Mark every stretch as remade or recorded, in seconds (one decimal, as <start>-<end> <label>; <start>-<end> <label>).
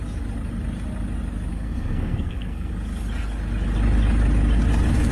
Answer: 0.0-1.5 recorded; 1.5-2.7 remade; 2.7-5.1 recorded